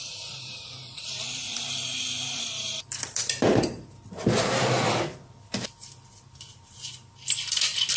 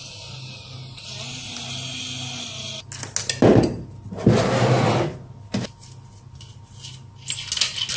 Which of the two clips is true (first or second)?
second